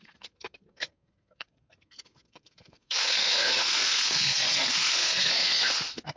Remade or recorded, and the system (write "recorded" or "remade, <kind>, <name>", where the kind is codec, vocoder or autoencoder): remade, codec, SNAC